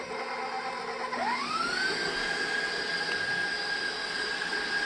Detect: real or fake real